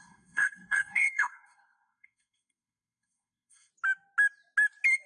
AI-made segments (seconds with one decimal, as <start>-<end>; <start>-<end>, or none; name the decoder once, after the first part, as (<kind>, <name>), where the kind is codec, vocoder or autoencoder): 0.0-3.7 (codec, SNAC)